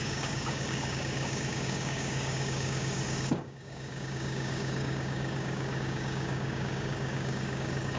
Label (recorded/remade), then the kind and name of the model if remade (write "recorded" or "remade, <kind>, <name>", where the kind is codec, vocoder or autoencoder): remade, codec, DAC